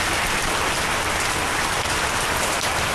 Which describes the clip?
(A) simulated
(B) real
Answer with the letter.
B